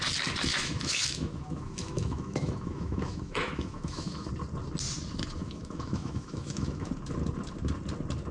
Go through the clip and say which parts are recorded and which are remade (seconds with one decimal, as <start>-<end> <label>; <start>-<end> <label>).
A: 0.0-0.5 recorded; 0.5-4.3 remade; 4.3-5.4 recorded; 5.4-6.9 remade; 6.9-8.3 recorded